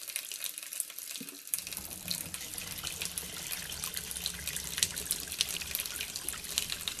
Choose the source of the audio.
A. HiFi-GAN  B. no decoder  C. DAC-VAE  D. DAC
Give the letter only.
B